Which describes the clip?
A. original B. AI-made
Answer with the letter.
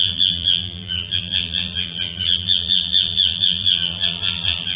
B